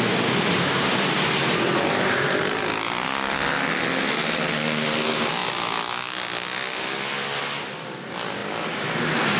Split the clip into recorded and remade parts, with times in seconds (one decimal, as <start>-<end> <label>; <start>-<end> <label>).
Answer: 0.0-9.4 recorded